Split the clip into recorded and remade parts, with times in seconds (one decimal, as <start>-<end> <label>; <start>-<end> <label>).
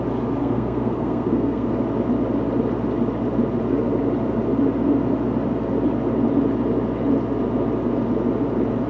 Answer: 0.0-0.4 recorded; 0.4-1.7 remade; 1.7-8.9 recorded